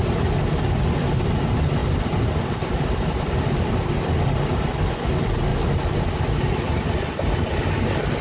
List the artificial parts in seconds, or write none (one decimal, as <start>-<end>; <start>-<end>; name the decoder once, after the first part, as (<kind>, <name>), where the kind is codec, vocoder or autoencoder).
none